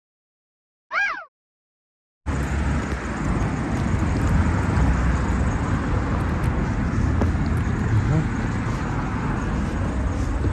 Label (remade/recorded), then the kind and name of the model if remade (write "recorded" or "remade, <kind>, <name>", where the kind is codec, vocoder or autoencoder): recorded